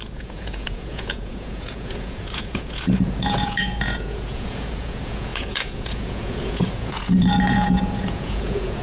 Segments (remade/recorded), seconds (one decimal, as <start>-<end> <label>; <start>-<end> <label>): 0.0-8.8 remade